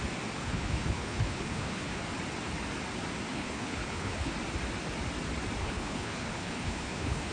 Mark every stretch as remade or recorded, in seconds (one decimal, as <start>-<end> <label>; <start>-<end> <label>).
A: 0.0-0.4 recorded; 0.4-2.0 remade; 2.0-3.3 recorded; 3.3-4.3 remade; 4.3-5.6 recorded; 5.6-7.3 remade